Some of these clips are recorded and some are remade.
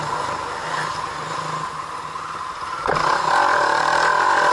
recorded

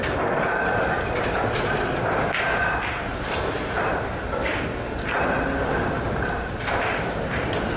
recorded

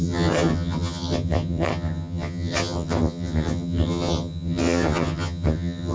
remade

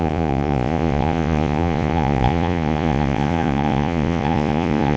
remade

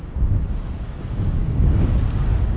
remade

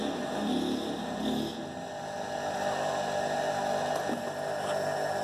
recorded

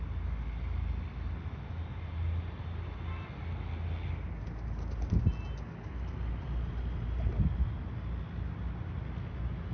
recorded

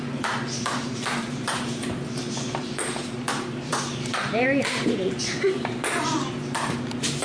remade